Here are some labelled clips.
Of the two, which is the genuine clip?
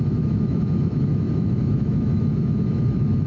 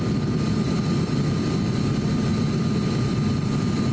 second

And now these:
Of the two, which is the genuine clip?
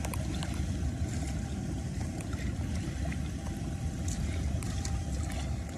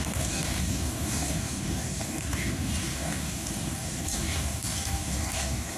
first